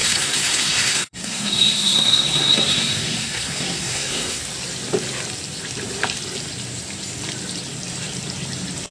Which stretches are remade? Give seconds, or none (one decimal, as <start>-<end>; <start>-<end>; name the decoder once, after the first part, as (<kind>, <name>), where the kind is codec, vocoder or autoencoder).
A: 0.0-4.4 (codec, SNAC)